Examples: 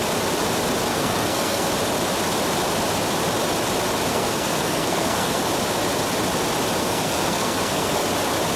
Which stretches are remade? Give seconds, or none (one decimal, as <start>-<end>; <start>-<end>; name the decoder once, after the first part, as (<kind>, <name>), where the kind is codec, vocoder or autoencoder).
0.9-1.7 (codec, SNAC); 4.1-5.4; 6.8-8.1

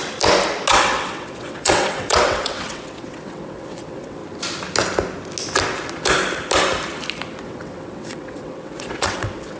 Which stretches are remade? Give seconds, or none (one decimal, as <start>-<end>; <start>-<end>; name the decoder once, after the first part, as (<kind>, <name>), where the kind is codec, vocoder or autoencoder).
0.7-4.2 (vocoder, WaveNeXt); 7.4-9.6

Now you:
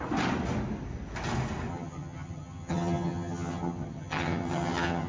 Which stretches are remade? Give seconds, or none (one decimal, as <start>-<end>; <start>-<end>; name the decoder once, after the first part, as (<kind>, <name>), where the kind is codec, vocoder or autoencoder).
1.7-5.1 (vocoder, HiFi-GAN)

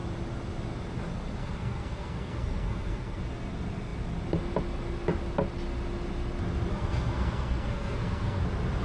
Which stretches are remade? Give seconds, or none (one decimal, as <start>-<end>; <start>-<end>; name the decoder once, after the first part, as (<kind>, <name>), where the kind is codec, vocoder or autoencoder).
1.4-3.2 (codec, SNAC); 6.7-8.4

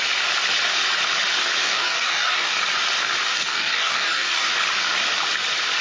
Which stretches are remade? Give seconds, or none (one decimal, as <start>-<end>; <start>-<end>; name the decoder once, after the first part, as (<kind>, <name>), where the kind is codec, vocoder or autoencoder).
1.6-2.5 (codec, DAC); 3.3-4.5